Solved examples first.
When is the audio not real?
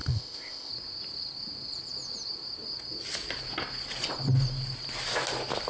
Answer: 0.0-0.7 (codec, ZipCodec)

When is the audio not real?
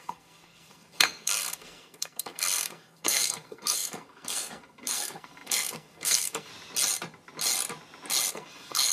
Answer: 0.0-6.5 (codec, SNAC); 8.3-8.9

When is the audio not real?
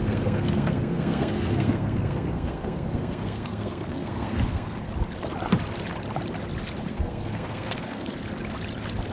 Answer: 0.0-4.9 (codec, SNAC); 6.9-8.1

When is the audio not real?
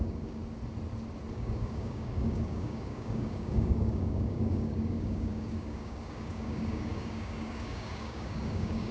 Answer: 0.0-0.4 (codec, DAC); 1.3-8.9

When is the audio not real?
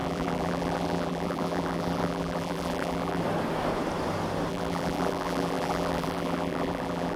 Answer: 0.0-3.2 (vocoder, BigVGAN v2); 4.5-7.2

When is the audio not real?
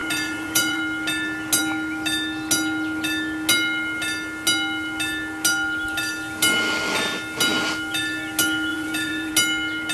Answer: 0.0-0.8 (vocoder, Vocos); 8.7-9.3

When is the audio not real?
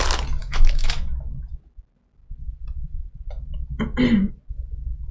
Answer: 0.4-1.0 (autoencoder, DAC-VAE)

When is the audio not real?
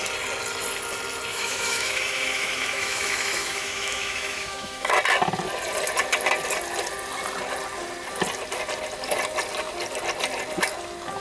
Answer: 1.3-4.9 (autoencoder, DAC-VAE)